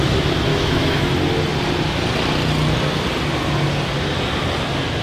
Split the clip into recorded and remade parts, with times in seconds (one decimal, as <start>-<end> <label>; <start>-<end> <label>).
0.0-0.5 recorded; 0.5-1.0 remade; 1.0-5.0 recorded